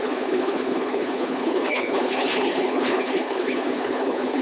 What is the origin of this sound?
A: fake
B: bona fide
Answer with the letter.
A